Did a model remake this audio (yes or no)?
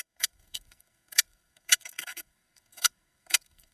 yes